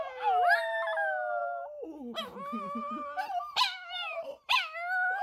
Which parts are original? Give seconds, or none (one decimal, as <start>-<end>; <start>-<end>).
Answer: 0.0-2.8; 4.6-5.2